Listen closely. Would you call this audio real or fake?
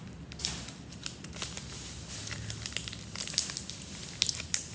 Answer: real